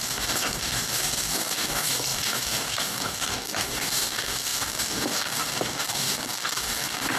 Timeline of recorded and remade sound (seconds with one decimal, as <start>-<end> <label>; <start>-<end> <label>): 0.0-7.2 remade

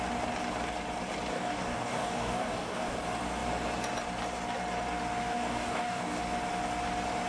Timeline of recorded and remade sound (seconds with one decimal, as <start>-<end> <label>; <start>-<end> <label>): 0.0-1.3 recorded; 1.3-3.0 remade; 3.0-5.2 recorded; 5.2-6.2 remade; 6.2-7.3 recorded

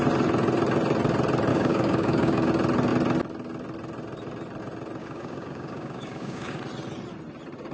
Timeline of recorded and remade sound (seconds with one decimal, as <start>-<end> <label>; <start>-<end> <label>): 0.0-1.5 recorded; 1.5-2.5 remade; 2.5-5.0 recorded; 5.0-6.6 remade; 6.6-7.7 recorded

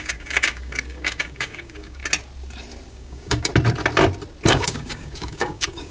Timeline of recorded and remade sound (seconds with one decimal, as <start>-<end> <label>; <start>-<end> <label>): 0.0-2.0 remade; 2.0-2.9 recorded; 2.9-3.5 remade; 3.5-4.5 recorded; 4.5-5.9 remade

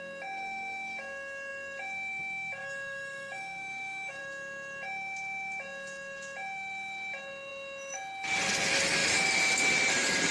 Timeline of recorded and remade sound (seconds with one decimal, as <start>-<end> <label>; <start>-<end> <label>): 0.0-2.6 recorded; 2.6-4.2 remade; 4.2-10.3 recorded

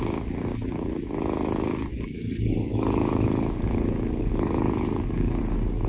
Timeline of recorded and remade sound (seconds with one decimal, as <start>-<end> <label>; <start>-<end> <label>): 0.0-1.9 recorded; 1.9-5.4 remade; 5.4-5.9 recorded

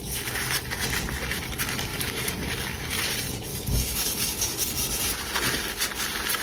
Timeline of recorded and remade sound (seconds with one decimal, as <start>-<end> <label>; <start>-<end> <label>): 0.0-1.9 recorded; 1.9-3.0 remade; 3.0-3.5 recorded; 3.5-4.8 remade; 4.8-6.4 recorded